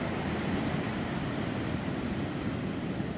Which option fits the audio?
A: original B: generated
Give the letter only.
A